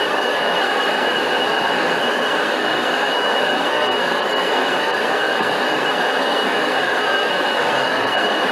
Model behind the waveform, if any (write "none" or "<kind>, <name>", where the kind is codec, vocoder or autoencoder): codec, SNAC